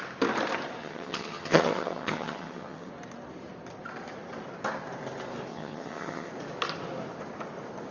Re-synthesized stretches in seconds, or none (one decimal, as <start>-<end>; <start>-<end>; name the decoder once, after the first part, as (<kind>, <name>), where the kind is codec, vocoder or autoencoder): 0.8-2.9 (vocoder, HiFi-GAN); 5.5-6.3